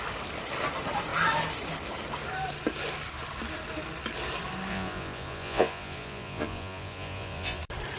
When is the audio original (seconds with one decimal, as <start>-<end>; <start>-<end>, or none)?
0.0-4.7; 7.6-8.0